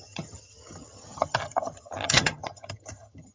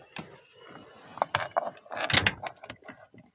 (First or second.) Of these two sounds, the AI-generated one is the first